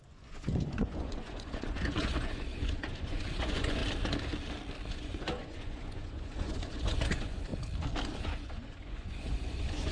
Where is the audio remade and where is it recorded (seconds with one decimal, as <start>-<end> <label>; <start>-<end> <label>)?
0.0-3.8 remade; 3.8-4.9 recorded; 4.9-7.5 remade; 7.5-8.2 recorded; 8.2-9.9 remade